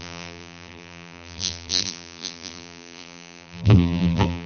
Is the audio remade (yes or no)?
yes